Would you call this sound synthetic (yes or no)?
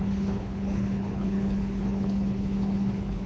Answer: yes